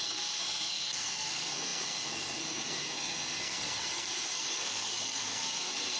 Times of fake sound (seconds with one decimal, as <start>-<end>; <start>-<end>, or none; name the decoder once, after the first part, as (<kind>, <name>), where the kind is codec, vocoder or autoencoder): 0.0-6.0 (codec, SNAC)